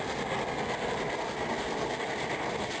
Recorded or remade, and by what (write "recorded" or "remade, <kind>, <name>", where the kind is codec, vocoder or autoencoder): recorded